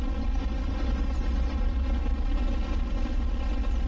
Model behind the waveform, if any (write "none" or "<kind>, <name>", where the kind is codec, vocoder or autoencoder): none